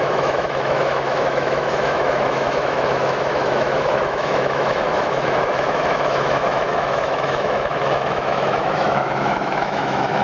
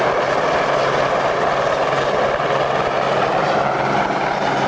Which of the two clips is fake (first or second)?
first